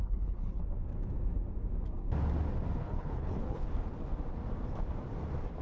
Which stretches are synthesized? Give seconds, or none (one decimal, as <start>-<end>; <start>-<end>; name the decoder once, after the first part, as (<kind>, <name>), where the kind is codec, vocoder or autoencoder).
0.0-0.6 (codec, HILCodec); 2.8-3.7